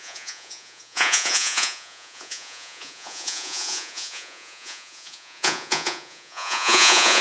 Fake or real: fake